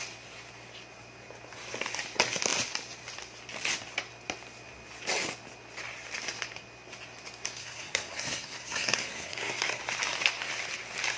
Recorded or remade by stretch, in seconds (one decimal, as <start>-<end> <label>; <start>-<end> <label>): 0.0-7.6 recorded; 7.6-9.8 remade; 9.8-11.2 recorded